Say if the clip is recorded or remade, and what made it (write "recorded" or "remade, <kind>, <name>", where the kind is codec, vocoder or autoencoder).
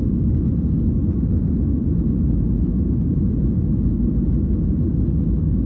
recorded